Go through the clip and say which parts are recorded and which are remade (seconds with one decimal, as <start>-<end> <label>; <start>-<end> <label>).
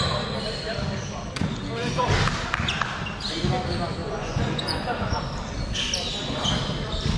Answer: 0.0-4.0 recorded; 4.0-5.2 remade; 5.2-7.2 recorded